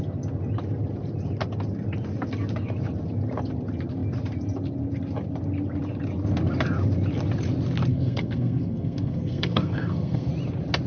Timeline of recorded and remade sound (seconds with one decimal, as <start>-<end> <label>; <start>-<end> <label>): 0.0-7.9 recorded; 7.9-10.3 remade; 10.3-10.9 recorded